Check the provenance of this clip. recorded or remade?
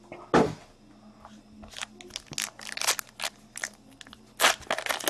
recorded